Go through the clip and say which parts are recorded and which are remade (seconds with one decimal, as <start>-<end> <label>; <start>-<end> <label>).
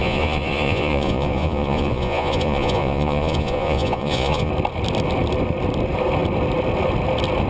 0.0-4.5 remade; 4.5-7.5 recorded